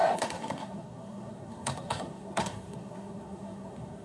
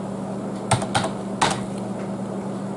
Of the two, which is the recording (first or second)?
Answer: second